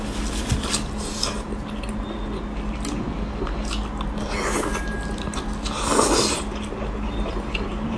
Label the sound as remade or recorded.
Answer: recorded